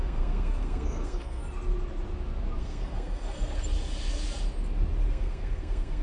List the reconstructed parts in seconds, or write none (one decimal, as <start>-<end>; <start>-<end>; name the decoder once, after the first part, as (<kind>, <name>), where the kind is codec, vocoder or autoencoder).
0.0-1.4 (codec, SNAC); 2.6-3.6; 5.1-6.0